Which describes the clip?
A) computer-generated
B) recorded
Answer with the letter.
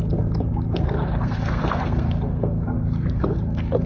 A